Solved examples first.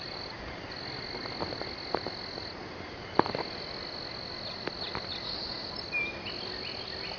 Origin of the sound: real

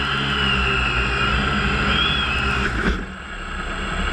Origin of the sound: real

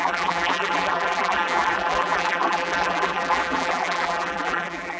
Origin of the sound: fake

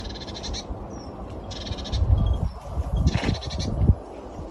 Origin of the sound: real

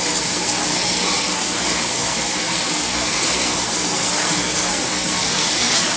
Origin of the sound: fake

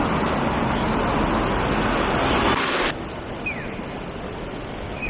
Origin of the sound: real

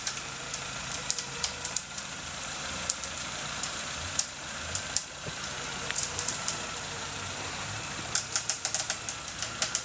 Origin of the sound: fake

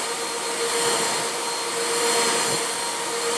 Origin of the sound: real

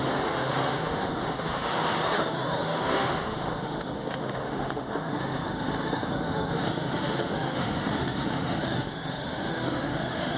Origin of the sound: fake